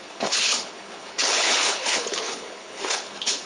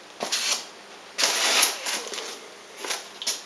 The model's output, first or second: first